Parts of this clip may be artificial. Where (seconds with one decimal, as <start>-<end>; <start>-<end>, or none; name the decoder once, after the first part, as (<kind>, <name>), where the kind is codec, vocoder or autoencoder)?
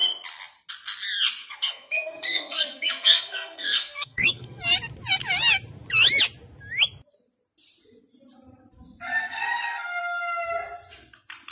1.4-4.6 (codec, SNAC); 9.2-10.0